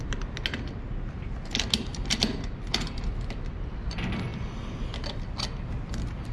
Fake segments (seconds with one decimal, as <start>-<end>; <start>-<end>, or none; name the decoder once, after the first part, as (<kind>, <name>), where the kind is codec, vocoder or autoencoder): none